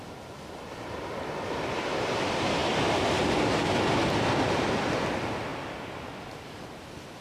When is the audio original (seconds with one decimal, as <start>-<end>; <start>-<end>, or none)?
0.0-7.2